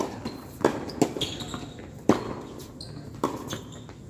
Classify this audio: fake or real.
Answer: real